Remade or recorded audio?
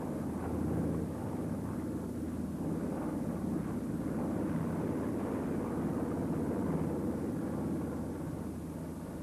recorded